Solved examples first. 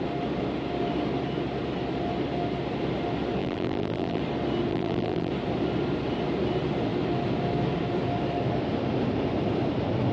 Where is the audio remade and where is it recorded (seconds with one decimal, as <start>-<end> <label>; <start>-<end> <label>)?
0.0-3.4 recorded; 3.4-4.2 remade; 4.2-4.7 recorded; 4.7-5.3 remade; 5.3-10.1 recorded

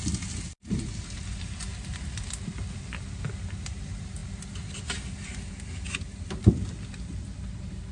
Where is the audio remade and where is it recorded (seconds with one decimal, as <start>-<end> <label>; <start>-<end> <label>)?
0.0-1.7 recorded; 1.7-3.0 remade; 3.0-7.9 recorded

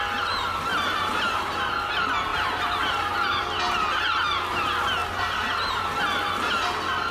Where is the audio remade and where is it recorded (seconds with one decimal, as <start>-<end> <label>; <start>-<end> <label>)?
0.0-0.7 recorded; 0.7-1.9 remade; 1.9-2.3 recorded; 2.3-3.4 remade; 3.4-5.0 recorded; 5.0-5.8 remade; 5.8-7.1 recorded

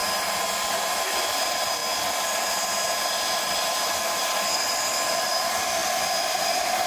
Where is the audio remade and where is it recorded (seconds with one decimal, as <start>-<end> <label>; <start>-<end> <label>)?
0.0-0.7 recorded; 0.7-1.8 remade; 1.8-4.2 recorded; 4.2-6.9 remade

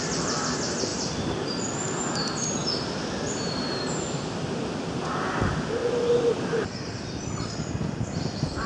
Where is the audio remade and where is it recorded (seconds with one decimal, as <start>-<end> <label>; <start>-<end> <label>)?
0.0-0.9 recorded; 0.9-1.6 remade; 1.6-2.6 recorded; 2.6-4.6 remade; 4.6-8.7 recorded

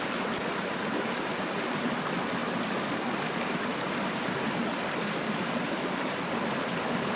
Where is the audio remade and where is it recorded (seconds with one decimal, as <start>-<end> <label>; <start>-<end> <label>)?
0.0-2.4 recorded; 2.4-3.3 remade; 3.3-7.2 recorded

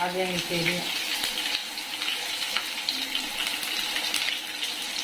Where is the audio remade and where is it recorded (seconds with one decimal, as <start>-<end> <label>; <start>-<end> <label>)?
0.0-5.0 recorded

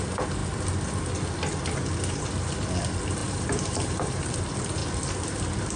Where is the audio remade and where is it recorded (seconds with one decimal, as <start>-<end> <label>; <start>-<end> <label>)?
0.0-3.2 recorded; 3.2-4.3 remade; 4.3-5.8 recorded